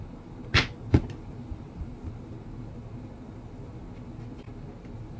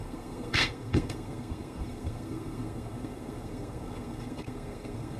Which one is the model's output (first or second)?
second